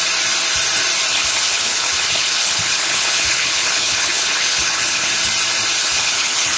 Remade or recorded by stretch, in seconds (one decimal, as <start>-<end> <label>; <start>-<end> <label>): 0.0-1.1 recorded; 1.1-5.1 remade; 5.1-5.8 recorded; 5.8-6.6 remade